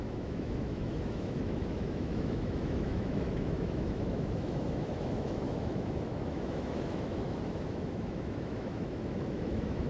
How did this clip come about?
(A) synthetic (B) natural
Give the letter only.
A